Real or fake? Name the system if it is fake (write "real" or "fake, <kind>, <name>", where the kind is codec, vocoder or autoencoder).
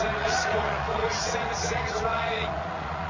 fake, vocoder, Vocos